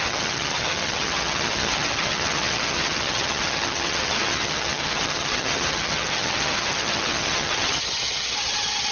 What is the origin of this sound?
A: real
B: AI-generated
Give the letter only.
B